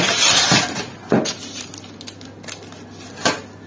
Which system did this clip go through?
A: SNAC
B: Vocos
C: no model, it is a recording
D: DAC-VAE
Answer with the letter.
C